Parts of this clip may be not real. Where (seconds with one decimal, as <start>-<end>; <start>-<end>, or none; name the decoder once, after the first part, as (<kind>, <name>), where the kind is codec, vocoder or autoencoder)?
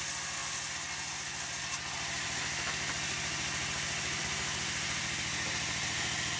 none